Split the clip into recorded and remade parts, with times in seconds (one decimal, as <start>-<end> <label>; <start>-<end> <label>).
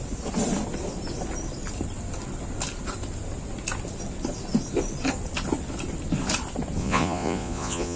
0.0-6.8 recorded; 6.8-8.0 remade